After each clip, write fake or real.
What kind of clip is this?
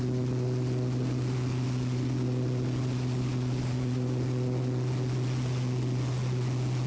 real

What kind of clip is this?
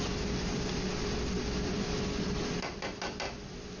real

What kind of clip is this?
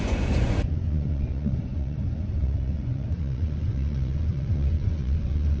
fake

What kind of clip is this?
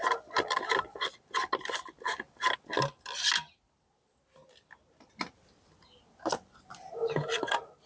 real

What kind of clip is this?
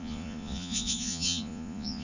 fake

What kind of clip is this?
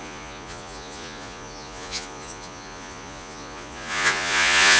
fake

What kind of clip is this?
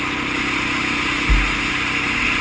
real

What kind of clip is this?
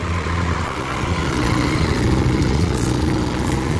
fake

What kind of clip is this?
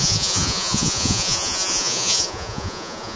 fake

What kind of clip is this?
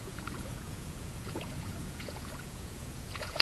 fake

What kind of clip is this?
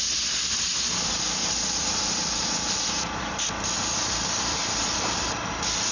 real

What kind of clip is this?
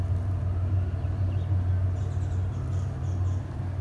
real